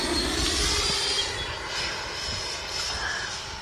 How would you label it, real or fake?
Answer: real